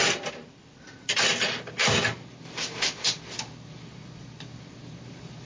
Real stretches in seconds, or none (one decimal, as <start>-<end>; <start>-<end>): 0.0-5.5